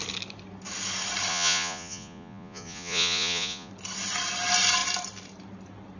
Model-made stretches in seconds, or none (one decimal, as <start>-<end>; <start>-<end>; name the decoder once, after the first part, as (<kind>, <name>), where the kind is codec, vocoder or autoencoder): 1.3-3.7 (vocoder, Vocos)